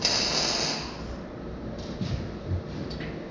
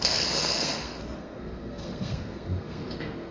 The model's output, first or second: second